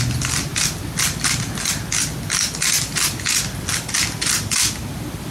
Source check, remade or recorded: recorded